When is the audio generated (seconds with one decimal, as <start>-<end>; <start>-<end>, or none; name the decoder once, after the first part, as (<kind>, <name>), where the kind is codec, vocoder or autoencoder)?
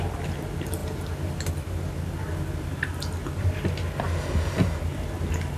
none